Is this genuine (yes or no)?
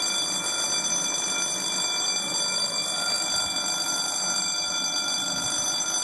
yes